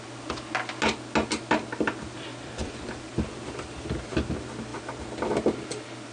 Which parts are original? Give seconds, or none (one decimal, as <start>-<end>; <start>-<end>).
0.0-2.6; 4.0-6.1